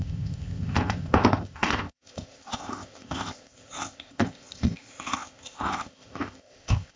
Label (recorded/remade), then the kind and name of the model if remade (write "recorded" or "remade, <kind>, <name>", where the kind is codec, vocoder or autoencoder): remade, codec, ZipCodec